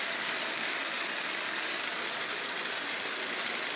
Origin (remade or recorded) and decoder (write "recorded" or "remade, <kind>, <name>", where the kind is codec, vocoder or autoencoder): recorded